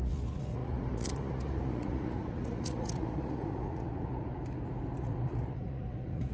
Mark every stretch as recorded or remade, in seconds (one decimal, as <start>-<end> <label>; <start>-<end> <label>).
0.0-4.4 remade; 4.4-5.0 recorded; 5.0-6.3 remade